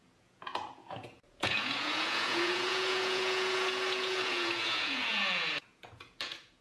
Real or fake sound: fake